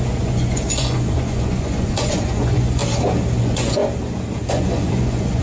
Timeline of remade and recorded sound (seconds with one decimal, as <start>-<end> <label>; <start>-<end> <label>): 0.0-2.8 remade; 2.8-3.4 recorded; 3.4-3.8 remade; 3.8-4.5 recorded; 4.5-5.4 remade